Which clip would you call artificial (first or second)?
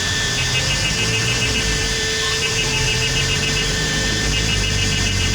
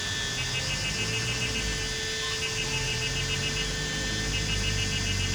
first